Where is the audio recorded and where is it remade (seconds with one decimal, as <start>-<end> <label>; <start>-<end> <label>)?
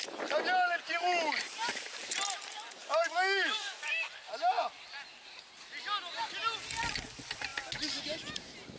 0.0-2.8 recorded; 2.8-4.1 remade; 4.1-8.8 recorded